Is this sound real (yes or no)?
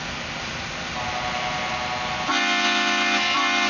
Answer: yes